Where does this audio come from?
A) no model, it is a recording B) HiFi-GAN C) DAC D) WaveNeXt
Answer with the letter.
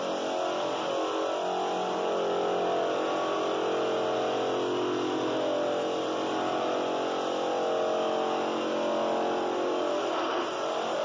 A